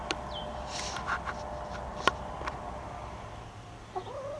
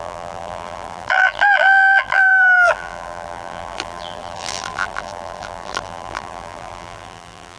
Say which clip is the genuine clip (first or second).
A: first